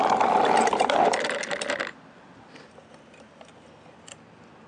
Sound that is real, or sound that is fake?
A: real